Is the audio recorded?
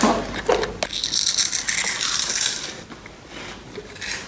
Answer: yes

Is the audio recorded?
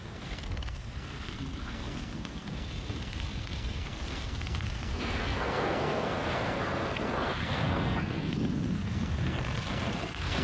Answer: no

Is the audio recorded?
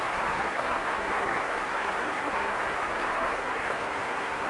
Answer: no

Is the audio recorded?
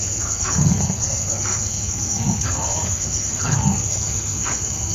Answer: no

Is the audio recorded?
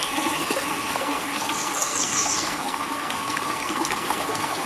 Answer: no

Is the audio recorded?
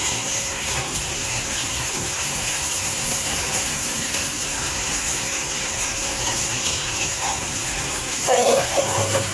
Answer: no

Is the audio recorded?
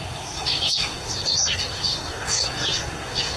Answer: no